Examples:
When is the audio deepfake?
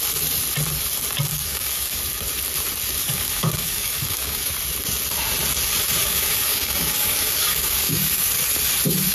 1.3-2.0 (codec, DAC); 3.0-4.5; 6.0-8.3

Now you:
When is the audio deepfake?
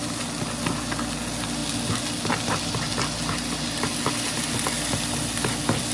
none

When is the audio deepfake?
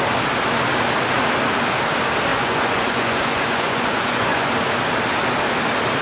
2.3-4.5 (vocoder, Vocos)